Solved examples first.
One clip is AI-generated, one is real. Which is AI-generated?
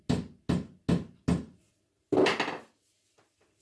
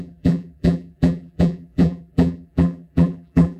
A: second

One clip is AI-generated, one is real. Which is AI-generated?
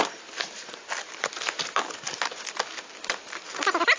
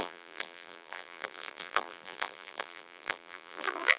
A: second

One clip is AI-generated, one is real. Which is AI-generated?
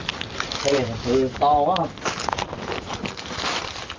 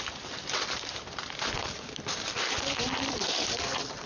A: second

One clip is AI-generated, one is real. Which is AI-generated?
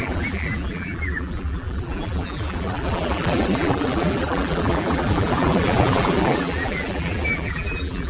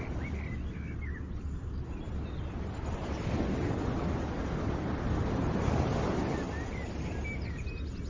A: first